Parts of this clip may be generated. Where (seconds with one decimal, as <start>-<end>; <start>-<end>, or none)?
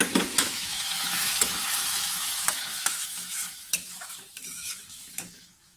0.0-5.8